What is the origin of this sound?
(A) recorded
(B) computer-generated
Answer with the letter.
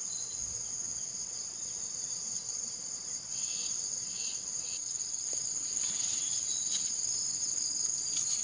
B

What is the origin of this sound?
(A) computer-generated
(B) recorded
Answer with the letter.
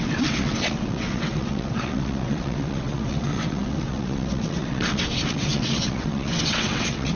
A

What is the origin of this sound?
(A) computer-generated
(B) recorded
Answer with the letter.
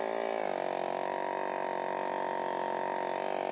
B